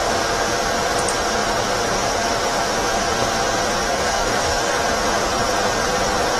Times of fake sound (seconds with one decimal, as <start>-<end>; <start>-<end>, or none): 3.9-4.8